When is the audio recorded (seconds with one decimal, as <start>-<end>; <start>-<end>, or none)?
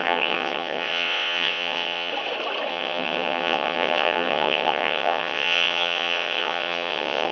2.1-2.7